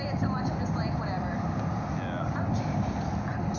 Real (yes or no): yes